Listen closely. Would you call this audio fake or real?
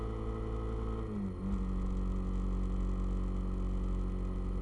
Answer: real